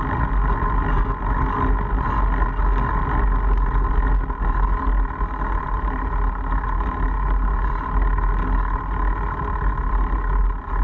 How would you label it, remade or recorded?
recorded